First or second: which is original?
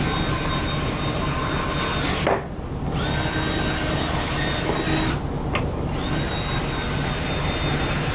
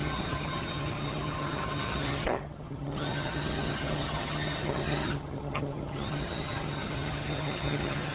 first